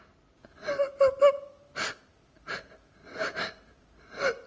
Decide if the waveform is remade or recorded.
recorded